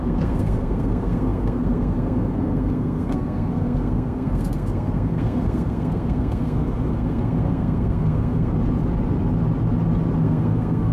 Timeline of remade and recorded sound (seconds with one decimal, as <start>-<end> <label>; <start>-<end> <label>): 0.0-8.5 remade; 8.5-10.2 recorded; 10.2-10.9 remade